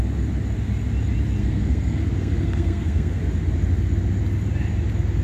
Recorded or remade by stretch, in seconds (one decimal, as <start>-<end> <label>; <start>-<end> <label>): 0.0-1.4 recorded; 1.4-3.2 remade; 3.2-5.2 recorded